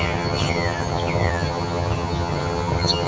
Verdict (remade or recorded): remade